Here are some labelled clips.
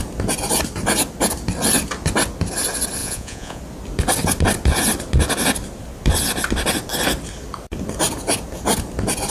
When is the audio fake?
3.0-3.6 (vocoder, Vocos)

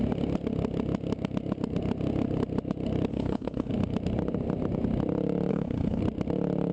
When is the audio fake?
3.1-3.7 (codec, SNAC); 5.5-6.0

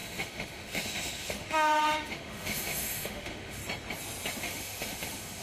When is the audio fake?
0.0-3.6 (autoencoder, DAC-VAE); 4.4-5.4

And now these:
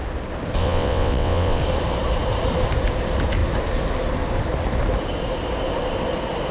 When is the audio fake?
0.6-1.6 (vocoder, WaveNeXt)

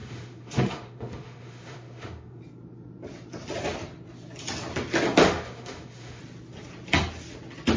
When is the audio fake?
0.0-2.4 (autoencoder, DAC-VAE); 5.2-6.2